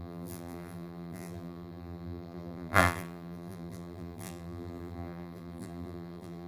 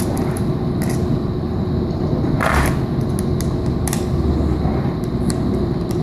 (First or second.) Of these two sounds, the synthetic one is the first